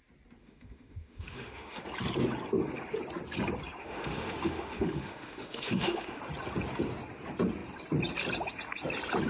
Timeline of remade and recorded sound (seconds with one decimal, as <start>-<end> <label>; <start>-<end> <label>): 0.0-0.4 recorded; 0.4-1.8 remade; 1.8-3.8 recorded; 3.8-6.2 remade; 6.2-9.3 recorded